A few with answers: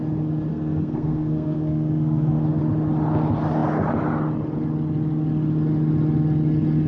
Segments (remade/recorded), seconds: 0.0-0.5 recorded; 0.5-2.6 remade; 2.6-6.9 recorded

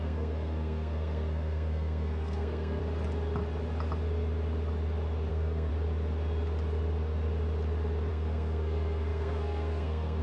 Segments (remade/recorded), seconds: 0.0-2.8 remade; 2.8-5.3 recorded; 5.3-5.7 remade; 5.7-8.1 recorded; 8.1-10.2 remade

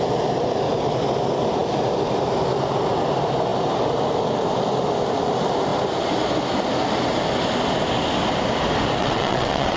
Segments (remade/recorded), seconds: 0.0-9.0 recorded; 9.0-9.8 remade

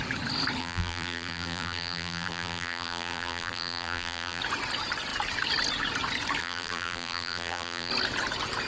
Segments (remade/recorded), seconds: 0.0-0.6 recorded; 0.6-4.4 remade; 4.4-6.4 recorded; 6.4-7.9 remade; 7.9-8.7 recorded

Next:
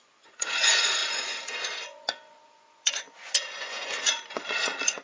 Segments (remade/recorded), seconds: 0.0-5.0 remade

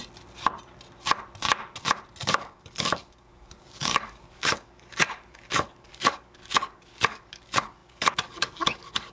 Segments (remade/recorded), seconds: 0.0-2.2 recorded; 2.2-9.1 remade